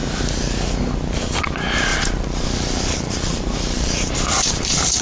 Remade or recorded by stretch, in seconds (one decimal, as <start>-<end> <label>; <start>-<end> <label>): 0.0-1.9 recorded; 1.9-5.0 remade